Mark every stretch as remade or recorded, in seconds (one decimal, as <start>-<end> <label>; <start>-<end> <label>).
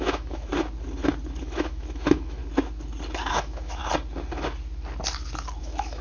0.0-0.5 remade; 0.5-1.4 recorded; 1.4-2.4 remade; 2.4-3.3 recorded; 3.3-3.8 remade; 3.8-5.6 recorded; 5.6-6.0 remade